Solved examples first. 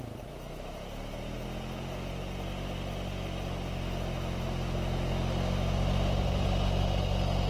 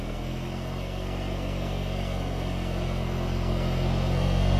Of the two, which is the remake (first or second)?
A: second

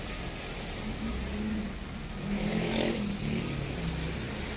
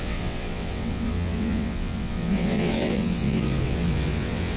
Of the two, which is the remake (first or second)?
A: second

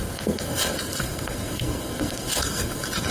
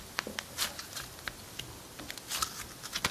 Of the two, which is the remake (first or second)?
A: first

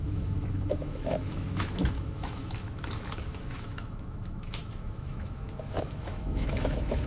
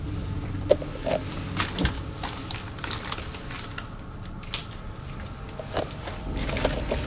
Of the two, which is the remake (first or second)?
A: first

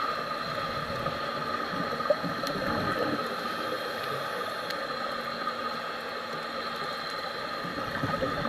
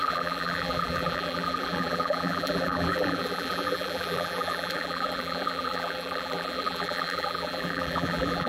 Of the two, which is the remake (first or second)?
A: second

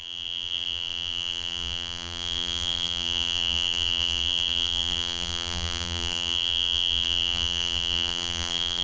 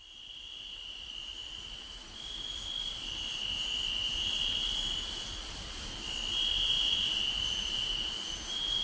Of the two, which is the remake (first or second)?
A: first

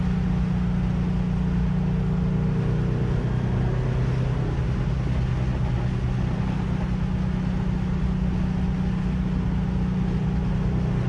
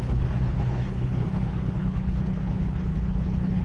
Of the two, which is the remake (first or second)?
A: second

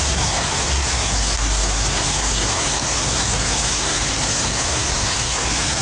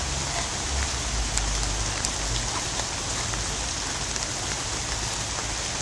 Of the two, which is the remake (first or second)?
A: first